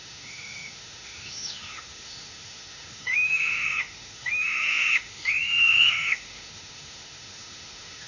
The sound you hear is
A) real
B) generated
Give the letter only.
B